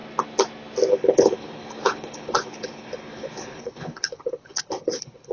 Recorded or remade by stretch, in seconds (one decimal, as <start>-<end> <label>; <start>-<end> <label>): 0.0-0.9 recorded; 0.9-5.3 remade